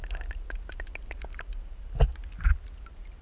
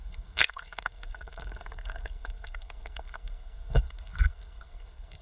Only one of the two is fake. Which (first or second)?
second